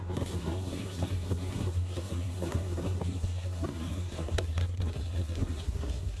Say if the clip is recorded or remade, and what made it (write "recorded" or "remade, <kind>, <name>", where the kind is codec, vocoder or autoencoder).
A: remade, codec, SNAC